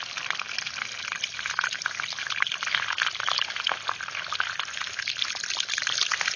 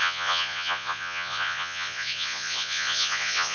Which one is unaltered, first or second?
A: first